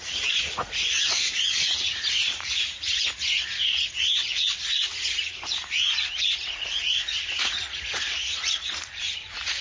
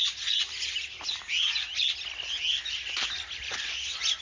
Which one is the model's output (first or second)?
first